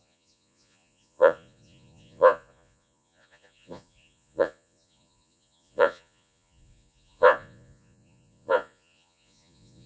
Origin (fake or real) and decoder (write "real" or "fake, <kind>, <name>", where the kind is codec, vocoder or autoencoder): fake, vocoder, Vocos